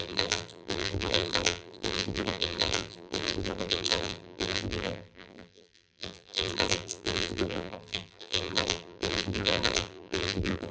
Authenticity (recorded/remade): remade